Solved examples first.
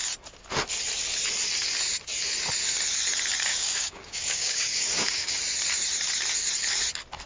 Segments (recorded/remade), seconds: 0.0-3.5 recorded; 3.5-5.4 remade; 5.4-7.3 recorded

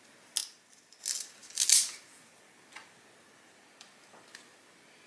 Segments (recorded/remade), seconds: 0.0-5.1 recorded

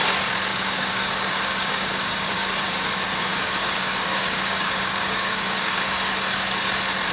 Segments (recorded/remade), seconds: 0.0-0.5 recorded; 0.5-2.6 remade; 2.6-3.3 recorded; 3.3-6.1 remade; 6.1-7.1 recorded